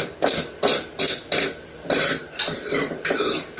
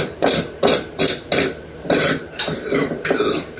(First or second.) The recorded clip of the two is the first